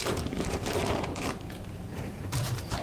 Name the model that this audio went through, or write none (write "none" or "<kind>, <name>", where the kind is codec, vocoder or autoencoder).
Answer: vocoder, BigVGAN v2